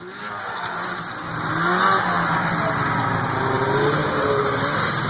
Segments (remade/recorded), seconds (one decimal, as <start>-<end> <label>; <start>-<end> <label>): 0.0-5.1 recorded